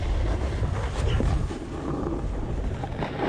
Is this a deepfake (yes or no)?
no